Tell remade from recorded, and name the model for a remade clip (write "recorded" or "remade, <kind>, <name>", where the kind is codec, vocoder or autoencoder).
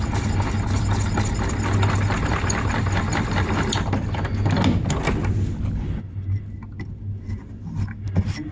recorded